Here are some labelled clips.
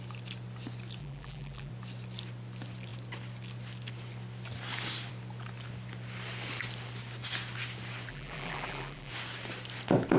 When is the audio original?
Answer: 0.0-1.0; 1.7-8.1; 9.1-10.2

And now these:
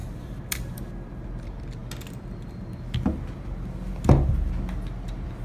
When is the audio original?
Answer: 0.8-5.4

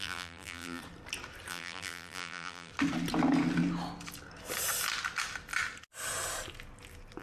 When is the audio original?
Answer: 0.8-1.5; 2.7-7.2

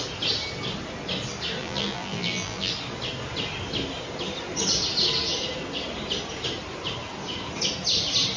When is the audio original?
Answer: 0.0-1.6; 2.7-8.4

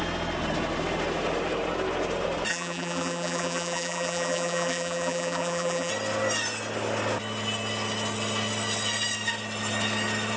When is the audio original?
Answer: 0.0-2.5; 5.9-10.4

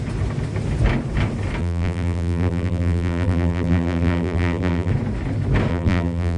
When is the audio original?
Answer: 0.0-1.6; 4.9-5.7

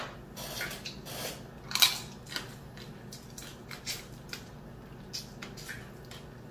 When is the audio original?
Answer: 0.0-3.5; 4.5-6.5